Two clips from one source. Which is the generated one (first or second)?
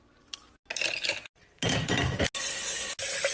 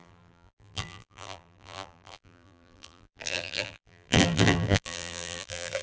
second